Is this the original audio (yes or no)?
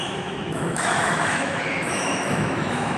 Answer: no